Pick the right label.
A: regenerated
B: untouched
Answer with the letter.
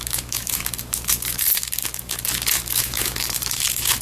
A